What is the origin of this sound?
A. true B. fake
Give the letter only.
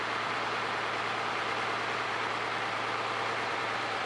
B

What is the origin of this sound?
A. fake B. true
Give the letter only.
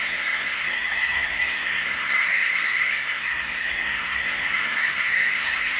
A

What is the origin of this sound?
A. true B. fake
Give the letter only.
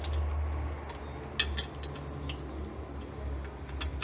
A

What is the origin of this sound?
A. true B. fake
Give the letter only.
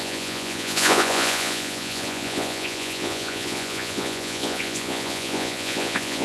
B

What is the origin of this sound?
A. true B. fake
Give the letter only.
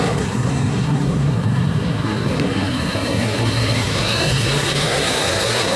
B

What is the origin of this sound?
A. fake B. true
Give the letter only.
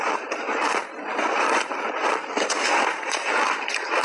B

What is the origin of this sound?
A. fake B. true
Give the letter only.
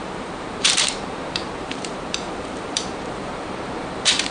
A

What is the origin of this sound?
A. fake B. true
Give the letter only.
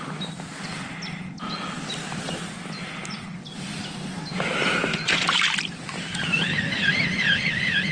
B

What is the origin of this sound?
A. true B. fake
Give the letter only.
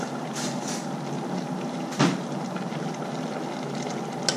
A